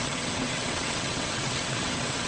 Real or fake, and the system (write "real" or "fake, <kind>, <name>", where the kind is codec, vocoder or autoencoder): fake, vocoder, WaveNeXt